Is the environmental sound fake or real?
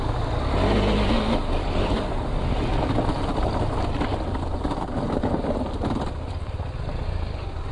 real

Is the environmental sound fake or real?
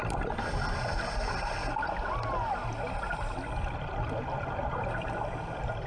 real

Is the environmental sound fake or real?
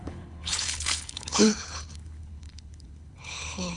fake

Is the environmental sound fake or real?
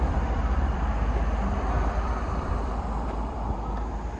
fake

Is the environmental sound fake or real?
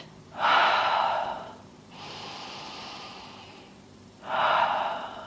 fake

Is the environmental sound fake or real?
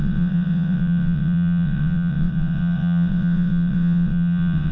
fake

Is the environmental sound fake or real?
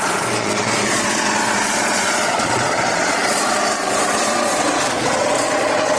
fake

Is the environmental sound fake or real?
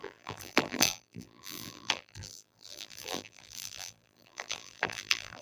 fake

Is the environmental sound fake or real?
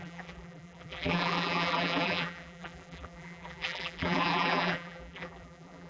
fake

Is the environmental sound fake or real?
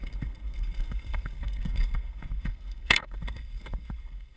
fake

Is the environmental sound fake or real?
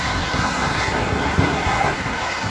fake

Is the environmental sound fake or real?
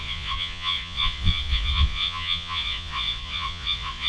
fake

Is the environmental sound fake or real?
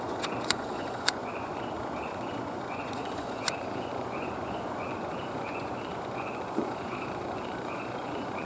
fake